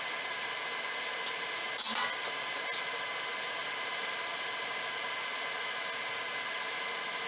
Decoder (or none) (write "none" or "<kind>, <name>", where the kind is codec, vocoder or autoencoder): none